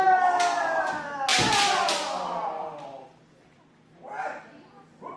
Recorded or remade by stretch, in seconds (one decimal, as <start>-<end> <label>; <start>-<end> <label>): 0.0-5.2 recorded